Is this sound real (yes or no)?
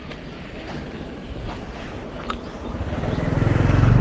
no